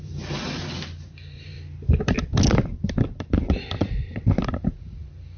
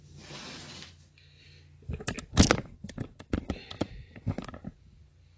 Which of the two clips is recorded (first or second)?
second